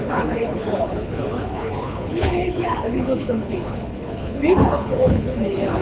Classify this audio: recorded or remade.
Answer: remade